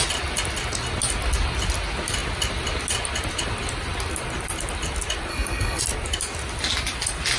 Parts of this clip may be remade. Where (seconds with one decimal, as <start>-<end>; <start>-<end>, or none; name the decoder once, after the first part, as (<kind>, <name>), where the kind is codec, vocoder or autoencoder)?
5.3-5.8 (codec, DAC)